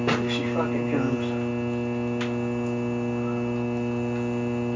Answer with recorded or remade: recorded